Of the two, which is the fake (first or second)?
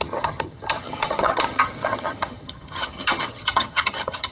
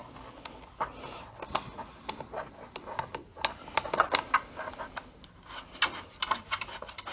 first